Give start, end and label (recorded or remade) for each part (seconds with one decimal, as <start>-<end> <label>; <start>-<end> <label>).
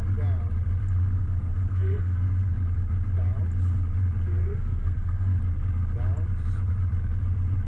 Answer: 0.0-1.2 recorded; 1.2-2.5 remade; 2.5-4.4 recorded; 4.4-5.4 remade; 5.4-7.7 recorded